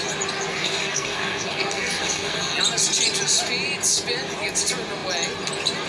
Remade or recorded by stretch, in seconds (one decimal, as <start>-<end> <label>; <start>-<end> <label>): 0.0-0.5 recorded; 0.5-2.6 remade; 2.6-5.9 recorded